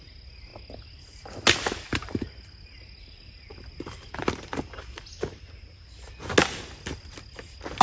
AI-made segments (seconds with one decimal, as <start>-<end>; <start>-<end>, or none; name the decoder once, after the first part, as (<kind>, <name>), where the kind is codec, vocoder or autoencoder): none